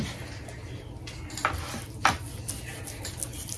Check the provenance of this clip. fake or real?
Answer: real